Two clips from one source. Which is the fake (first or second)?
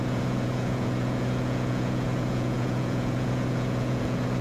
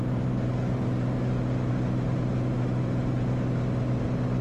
first